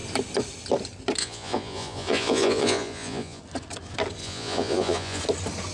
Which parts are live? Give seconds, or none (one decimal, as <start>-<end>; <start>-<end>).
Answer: 0.0-1.2; 3.4-4.2; 5.2-5.7